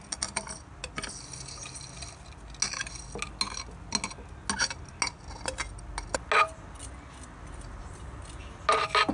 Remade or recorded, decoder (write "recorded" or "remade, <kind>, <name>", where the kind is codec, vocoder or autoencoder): recorded